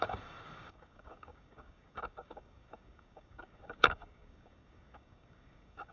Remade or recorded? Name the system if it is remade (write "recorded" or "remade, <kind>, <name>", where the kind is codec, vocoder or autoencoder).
remade, codec, DAC